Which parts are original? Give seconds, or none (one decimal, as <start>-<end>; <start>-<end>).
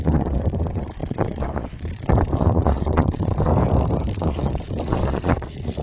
3.5-4.2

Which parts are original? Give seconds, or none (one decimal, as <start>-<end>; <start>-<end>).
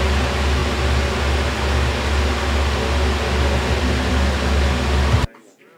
0.0-5.8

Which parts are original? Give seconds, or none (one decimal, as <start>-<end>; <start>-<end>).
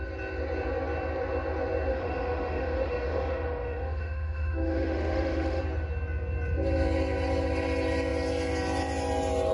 0.0-1.9; 5.6-9.5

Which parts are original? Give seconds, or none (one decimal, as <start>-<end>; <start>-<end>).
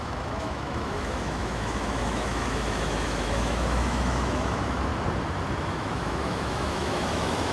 4.9-5.6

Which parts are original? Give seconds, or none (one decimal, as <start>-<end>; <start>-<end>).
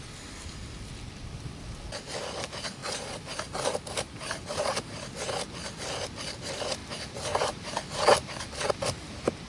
0.0-2.8; 5.0-6.8; 8.7-9.5